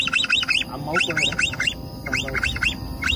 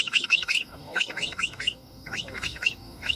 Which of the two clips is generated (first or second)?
second